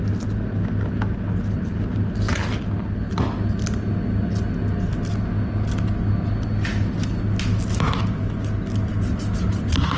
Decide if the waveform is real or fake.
real